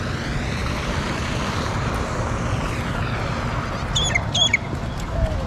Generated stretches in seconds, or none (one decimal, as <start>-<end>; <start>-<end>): none